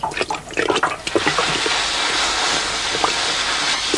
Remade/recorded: recorded